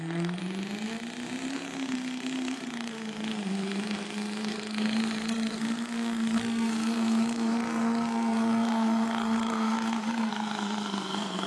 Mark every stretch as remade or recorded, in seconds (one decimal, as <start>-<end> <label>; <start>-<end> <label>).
0.0-0.4 remade; 0.4-1.5 recorded; 1.5-11.5 remade